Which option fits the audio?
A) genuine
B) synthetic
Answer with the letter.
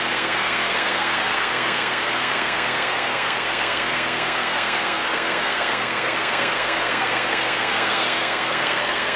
B